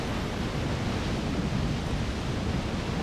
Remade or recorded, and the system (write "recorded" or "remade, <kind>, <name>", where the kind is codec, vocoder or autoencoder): recorded